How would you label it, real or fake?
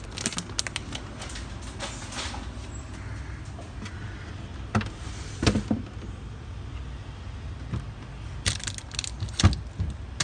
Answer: real